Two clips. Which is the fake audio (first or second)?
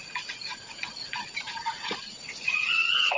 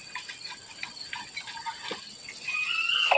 first